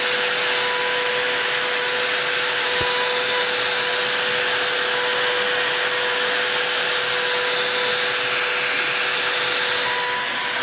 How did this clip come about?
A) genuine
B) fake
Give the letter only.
A